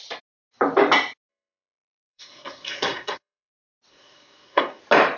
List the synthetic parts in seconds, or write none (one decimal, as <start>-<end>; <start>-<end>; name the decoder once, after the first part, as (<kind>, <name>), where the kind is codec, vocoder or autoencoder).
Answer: 1.3-3.5 (codec, SNAC); 3.9-4.8